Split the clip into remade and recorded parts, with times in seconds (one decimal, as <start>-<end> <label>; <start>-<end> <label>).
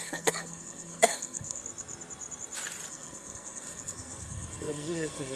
0.0-1.6 remade; 1.6-2.9 recorded; 2.9-5.4 remade